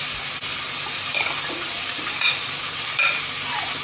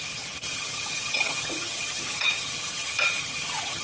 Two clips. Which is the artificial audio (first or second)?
second